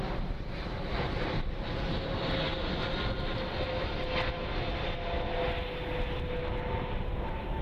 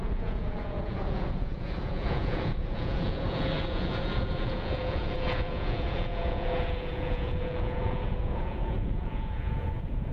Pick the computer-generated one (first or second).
second